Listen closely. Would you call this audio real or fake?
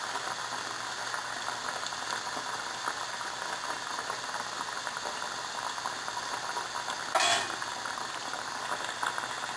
real